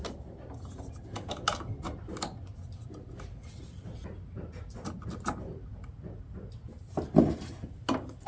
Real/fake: real